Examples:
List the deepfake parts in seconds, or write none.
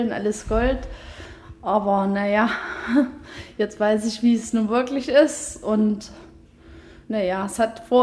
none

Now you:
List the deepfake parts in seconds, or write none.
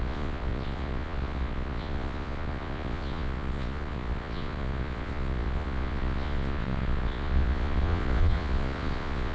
0.0-9.3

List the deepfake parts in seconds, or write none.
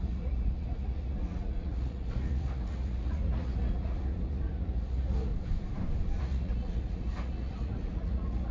0.0-5.3; 6.2-8.5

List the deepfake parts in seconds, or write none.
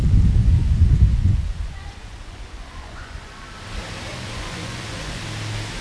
0.0-3.5; 4.1-5.2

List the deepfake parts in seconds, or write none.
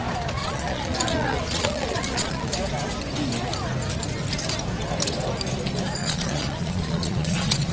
0.4-2.5; 6.0-7.7